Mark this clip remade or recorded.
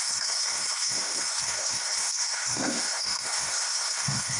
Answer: remade